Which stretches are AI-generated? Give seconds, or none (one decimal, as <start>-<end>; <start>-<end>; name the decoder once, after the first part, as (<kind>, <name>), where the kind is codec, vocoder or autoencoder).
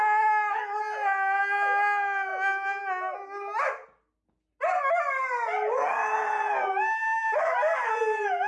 none